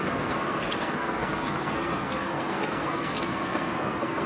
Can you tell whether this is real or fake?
fake